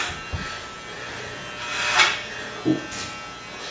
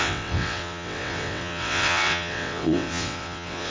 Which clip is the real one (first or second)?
first